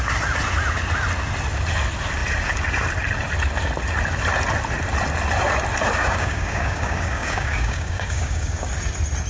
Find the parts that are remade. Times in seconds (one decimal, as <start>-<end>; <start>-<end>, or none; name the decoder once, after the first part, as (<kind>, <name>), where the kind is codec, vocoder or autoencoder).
6.0-8.7 (codec, DAC)